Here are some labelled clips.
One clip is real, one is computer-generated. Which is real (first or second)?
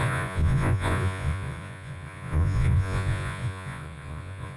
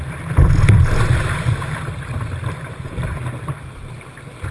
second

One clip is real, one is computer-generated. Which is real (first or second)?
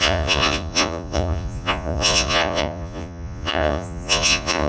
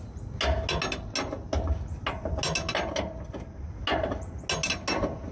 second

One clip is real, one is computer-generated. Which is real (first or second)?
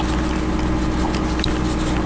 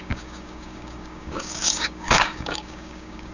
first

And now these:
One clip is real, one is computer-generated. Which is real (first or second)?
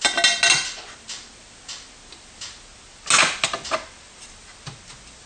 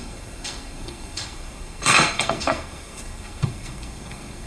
first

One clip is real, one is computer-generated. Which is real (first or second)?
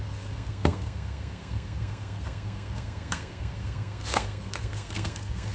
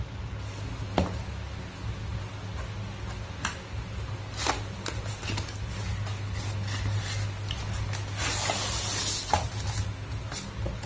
second